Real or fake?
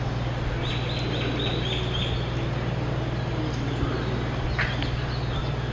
real